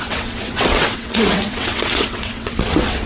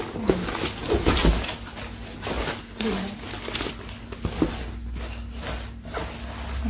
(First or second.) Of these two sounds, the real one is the second